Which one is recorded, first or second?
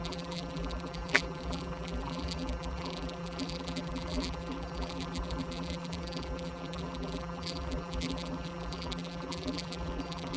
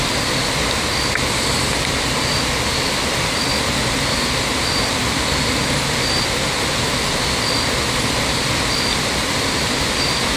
second